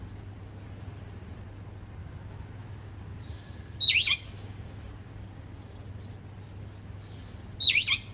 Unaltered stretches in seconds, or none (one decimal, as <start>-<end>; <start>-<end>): 0.0-8.1